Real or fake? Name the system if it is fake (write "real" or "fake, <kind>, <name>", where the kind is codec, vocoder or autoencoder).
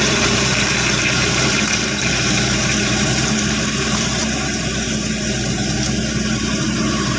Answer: fake, vocoder, BigVGAN v2